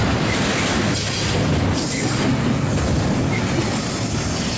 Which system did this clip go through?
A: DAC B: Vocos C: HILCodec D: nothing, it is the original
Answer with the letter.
D